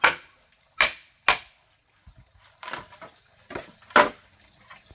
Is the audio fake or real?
real